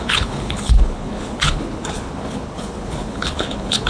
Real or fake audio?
fake